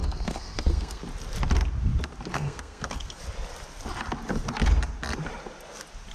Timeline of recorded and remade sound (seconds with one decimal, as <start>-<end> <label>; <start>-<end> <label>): 0.0-1.0 remade; 1.0-2.3 recorded; 2.3-3.2 remade; 3.2-6.1 recorded